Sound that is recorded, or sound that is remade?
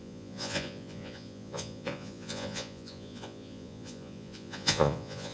remade